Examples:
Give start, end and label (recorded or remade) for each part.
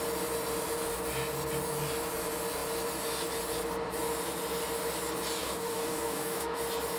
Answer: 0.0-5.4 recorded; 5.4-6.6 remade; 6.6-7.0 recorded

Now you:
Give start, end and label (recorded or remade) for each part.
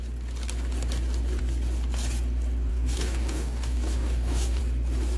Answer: 0.0-2.7 recorded; 2.7-4.6 remade; 4.6-5.2 recorded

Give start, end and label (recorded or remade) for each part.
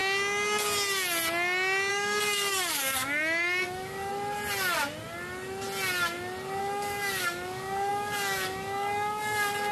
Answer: 0.0-1.9 recorded; 1.9-4.1 remade; 4.1-6.6 recorded; 6.6-9.7 remade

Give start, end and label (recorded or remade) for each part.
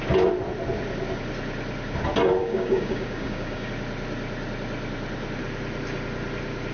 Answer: 0.0-2.4 recorded; 2.4-3.7 remade; 3.7-6.7 recorded